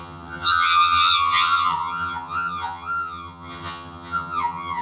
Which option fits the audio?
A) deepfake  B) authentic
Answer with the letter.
A